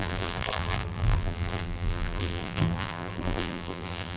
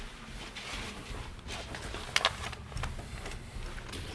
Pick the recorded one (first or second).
second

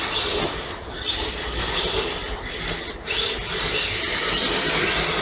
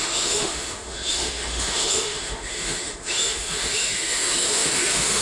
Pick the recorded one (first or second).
first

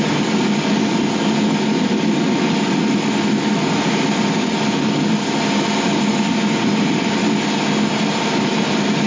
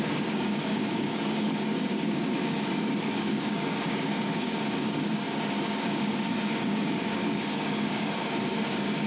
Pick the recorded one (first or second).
first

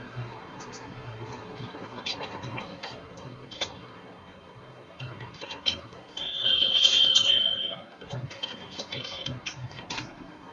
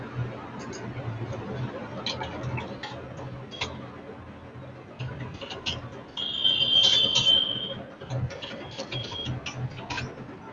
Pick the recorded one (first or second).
second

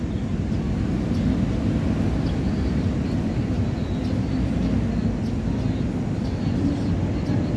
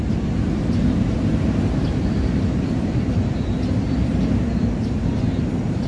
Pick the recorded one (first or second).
first